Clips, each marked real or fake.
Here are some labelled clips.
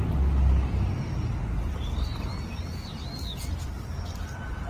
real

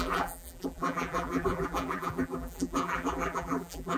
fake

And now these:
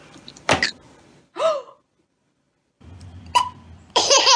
fake